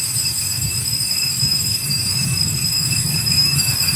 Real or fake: fake